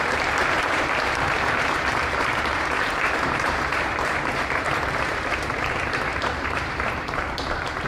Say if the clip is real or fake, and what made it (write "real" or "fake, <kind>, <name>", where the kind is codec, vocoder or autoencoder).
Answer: fake, vocoder, BigVGAN v2